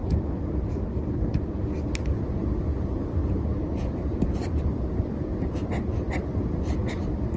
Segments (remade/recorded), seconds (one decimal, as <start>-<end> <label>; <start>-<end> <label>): 0.0-3.2 recorded; 3.2-6.0 remade; 6.0-7.4 recorded